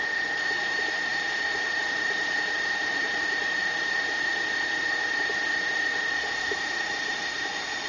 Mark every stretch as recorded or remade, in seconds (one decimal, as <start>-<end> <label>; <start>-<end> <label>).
0.0-7.9 recorded